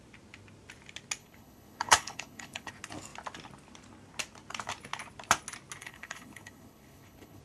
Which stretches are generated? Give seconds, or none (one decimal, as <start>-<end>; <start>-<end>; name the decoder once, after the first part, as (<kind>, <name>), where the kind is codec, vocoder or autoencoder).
1.2-2.7 (codec, HILCodec); 5.8-7.4

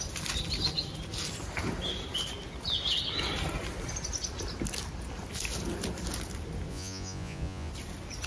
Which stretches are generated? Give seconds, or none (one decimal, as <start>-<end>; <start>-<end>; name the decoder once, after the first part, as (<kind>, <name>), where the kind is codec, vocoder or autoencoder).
6.7-7.7 (vocoder, Vocos)

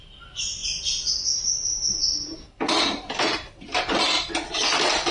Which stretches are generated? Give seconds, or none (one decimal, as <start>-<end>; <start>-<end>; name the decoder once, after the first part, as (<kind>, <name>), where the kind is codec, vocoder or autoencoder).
0.6-1.1 (vocoder, BigVGAN v2)

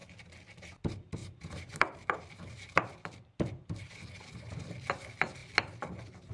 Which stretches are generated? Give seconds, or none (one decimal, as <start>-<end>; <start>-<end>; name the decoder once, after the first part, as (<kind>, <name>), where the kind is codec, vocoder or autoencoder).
0.0-0.7 (vocoder, BigVGAN v2); 1.2-3.9

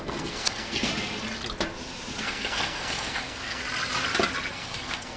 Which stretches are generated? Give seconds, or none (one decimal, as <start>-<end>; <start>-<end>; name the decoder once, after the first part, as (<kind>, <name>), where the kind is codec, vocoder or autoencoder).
0.0-0.9 (codec, SNAC); 2.2-3.6; 4.5-5.2